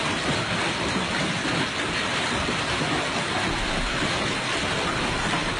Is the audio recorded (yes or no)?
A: yes